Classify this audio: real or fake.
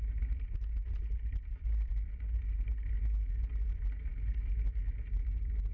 real